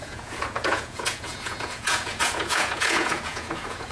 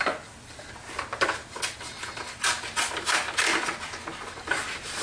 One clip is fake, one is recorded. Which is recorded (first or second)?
second